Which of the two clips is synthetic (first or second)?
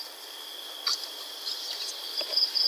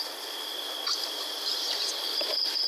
second